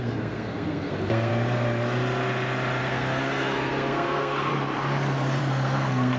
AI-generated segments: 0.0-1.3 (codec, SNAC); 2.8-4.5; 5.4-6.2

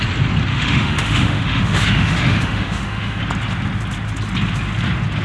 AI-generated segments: 0.5-3.2 (autoencoder, DAC-VAE)

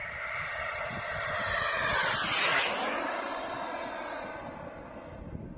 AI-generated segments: 2.5-5.6 (vocoder, BigVGAN v2)

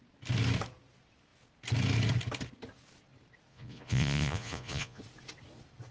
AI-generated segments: 3.5-5.0 (vocoder, Vocos)

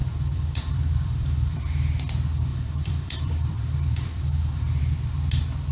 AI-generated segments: 0.0-1.9 (vocoder, BigVGAN v2); 2.5-4.8

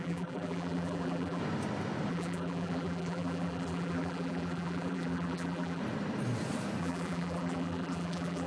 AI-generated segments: 0.0-1.4 (vocoder, BigVGAN v2); 2.1-5.8; 6.8-8.5

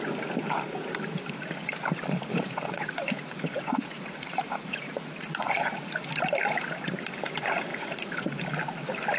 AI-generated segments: 2.3-6.1 (vocoder, Vocos); 7.7-8.4